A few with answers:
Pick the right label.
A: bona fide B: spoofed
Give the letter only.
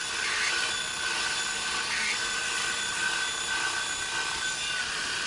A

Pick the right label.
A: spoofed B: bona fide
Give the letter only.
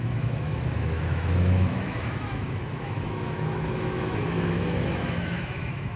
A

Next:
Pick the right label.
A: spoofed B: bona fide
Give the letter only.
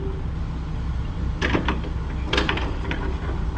B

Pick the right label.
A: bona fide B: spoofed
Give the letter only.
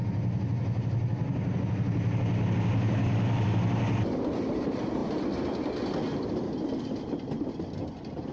A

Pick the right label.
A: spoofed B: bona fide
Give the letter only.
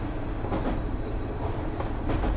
B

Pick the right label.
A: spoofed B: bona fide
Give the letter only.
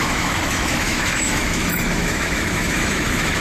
A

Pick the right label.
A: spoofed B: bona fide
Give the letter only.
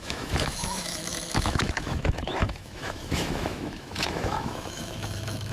A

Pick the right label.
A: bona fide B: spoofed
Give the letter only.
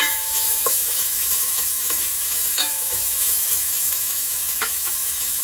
B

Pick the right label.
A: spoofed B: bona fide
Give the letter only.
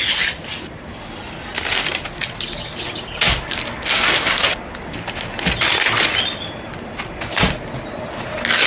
B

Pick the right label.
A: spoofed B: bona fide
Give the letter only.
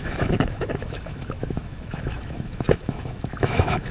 A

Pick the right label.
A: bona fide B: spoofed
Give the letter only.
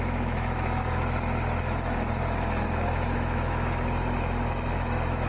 B